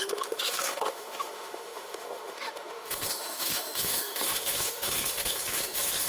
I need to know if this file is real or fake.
fake